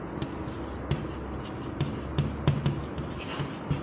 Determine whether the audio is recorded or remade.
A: recorded